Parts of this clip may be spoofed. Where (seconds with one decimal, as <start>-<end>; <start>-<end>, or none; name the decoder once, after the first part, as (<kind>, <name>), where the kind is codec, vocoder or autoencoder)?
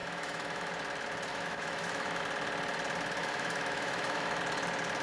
0.0-0.7 (autoencoder, DAC-VAE); 1.3-2.2; 3.2-4.4